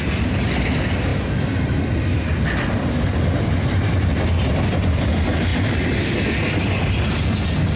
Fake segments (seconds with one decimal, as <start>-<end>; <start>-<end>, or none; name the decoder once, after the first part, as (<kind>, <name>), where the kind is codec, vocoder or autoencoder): none